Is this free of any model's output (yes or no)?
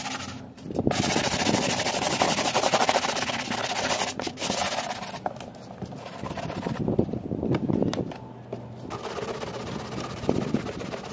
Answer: yes